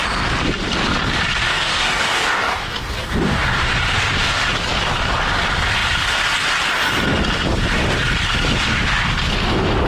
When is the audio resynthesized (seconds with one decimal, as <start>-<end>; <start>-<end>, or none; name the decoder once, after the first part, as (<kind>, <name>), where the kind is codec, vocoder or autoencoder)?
1.5-3.8 (codec, DAC)